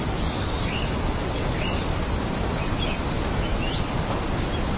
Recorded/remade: recorded